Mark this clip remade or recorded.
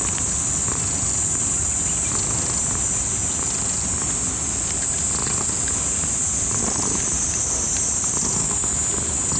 recorded